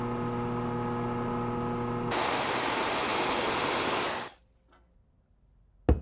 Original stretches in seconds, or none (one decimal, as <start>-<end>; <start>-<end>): 0.0-3.1; 3.7-6.0